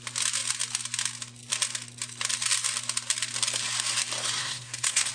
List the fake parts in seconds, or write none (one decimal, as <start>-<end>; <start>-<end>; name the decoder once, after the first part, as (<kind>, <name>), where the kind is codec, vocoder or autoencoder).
4.4-5.1 (codec, SNAC)